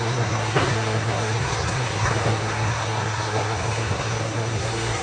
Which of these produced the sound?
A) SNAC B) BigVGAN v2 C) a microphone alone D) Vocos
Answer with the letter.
A